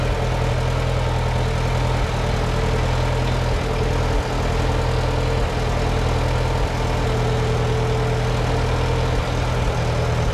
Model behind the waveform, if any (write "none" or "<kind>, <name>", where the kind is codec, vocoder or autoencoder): none